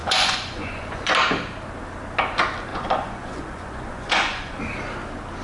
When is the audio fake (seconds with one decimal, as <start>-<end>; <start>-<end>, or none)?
0.0-1.1; 2.7-4.6